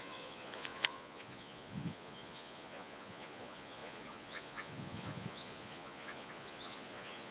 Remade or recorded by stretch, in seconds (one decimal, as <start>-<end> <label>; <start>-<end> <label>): 0.0-7.3 remade